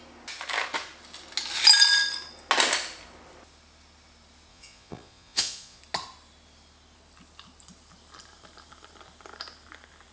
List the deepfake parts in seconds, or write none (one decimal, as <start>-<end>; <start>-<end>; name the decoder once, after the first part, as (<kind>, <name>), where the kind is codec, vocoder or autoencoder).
4.5-5.8 (vocoder, Vocos)

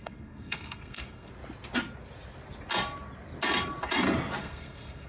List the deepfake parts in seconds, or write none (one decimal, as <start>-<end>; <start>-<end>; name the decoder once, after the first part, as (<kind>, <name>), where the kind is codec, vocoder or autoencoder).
0.0-1.3 (codec, SNAC); 4.4-5.1